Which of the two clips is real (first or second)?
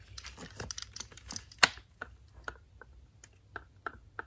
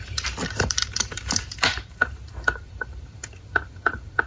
first